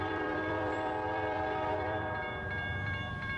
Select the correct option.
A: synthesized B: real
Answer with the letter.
A